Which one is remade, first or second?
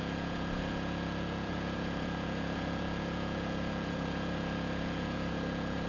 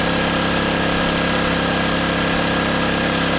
first